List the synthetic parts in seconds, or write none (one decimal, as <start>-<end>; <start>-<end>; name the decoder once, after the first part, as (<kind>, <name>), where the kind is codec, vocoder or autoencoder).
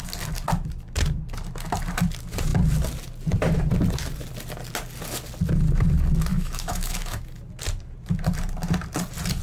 6.3-7.2 (autoencoder, DAC-VAE)